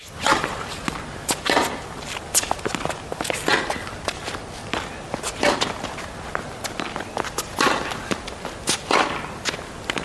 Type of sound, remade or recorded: recorded